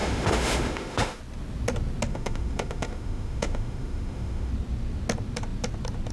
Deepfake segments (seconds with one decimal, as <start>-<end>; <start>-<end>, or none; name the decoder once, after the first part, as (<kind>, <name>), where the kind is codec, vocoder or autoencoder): 0.0-1.2 (autoencoder, DAC-VAE); 2.1-4.5